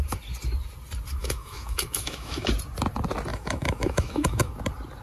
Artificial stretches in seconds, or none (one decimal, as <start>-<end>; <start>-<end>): 1.2-2.5; 3.3-4.5